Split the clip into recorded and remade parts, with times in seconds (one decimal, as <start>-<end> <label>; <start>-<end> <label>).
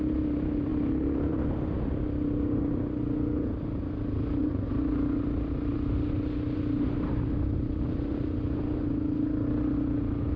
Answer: 0.0-10.4 recorded